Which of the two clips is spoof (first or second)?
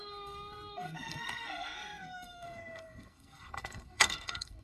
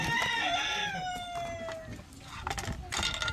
first